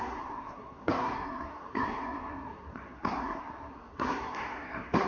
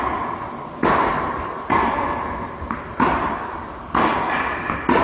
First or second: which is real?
second